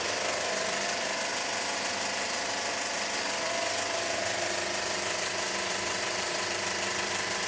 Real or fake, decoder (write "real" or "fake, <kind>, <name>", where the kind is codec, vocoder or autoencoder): fake, vocoder, BigVGAN v2